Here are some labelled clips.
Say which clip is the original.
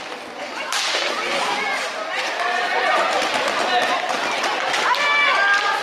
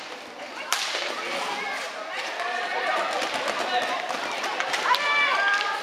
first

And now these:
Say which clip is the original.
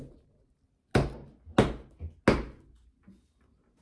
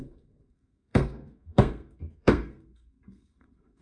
first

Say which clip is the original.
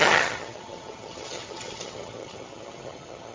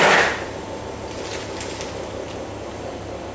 second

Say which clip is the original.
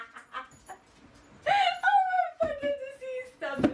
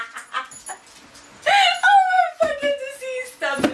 second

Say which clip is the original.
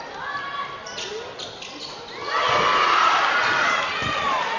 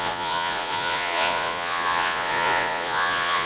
first